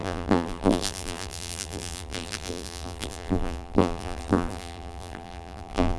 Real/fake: fake